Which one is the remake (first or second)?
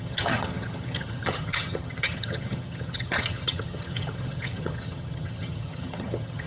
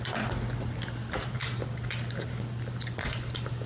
first